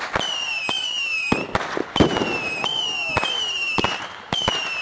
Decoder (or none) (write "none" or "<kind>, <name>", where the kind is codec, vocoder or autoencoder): none